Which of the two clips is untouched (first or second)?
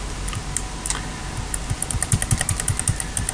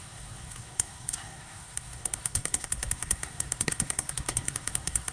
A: first